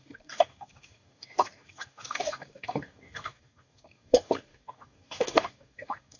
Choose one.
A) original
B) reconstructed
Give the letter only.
B